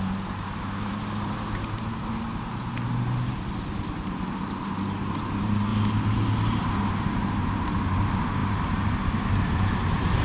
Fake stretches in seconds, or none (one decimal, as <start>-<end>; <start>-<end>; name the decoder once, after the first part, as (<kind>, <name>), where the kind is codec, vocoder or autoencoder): 0.0-2.7 (vocoder, BigVGAN v2); 5.0-5.7; 7.0-10.2